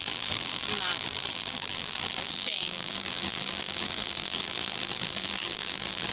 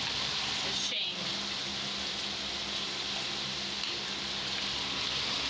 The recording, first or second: second